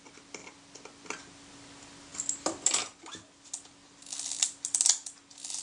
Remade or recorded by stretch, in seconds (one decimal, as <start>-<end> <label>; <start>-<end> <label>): 0.0-5.6 recorded